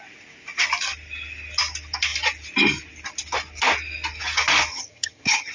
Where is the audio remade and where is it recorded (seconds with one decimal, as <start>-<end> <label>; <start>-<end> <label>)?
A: 0.0-4.7 recorded; 4.7-5.5 remade